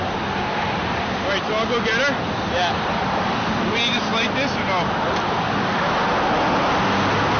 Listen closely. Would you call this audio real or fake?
real